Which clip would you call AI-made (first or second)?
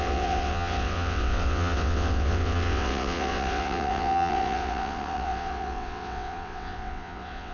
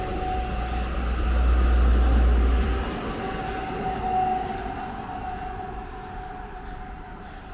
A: first